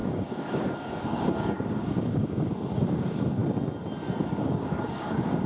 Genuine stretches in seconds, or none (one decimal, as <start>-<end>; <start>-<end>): 3.4-4.3